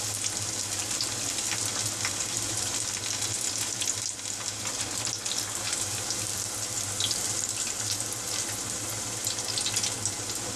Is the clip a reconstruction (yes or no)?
no